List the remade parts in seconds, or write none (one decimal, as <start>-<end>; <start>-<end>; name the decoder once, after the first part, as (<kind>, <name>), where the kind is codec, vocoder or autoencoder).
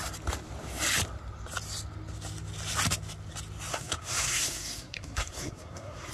3.7-6.1 (codec, SNAC)